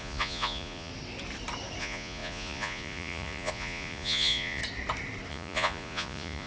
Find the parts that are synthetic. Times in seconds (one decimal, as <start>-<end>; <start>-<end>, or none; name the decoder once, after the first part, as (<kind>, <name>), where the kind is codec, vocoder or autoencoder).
0.0-0.9 (vocoder, Vocos); 1.8-4.6; 5.3-6.5